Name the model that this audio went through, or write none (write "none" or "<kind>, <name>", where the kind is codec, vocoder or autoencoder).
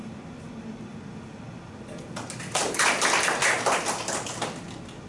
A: none